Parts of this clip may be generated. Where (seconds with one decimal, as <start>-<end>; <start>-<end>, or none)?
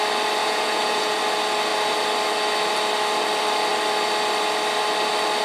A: 0.4-1.2